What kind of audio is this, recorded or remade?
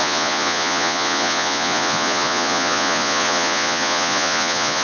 remade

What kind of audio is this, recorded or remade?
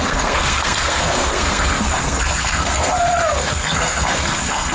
remade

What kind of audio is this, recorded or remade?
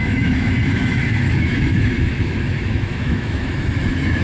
remade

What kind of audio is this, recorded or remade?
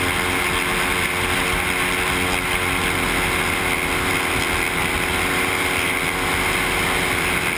recorded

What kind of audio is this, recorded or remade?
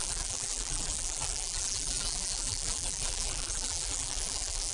remade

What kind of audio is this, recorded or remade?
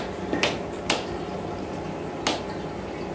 recorded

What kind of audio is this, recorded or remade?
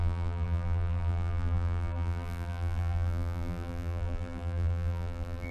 remade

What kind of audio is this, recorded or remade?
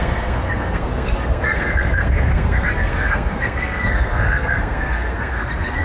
remade